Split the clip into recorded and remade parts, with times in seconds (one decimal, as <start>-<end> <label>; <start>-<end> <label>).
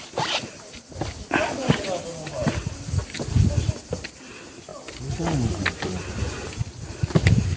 0.0-7.6 recorded